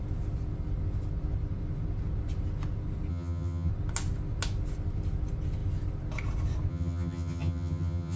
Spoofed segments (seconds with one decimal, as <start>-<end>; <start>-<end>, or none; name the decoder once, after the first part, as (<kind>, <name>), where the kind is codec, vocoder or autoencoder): 3.1-3.7 (vocoder, HiFi-GAN); 6.7-8.2